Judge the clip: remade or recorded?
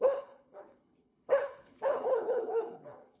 remade